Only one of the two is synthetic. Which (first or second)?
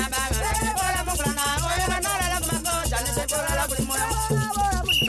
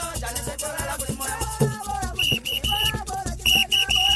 second